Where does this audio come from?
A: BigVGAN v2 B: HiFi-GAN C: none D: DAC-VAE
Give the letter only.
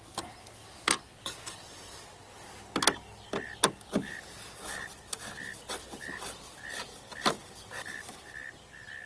C